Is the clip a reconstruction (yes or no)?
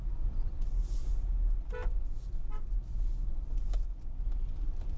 no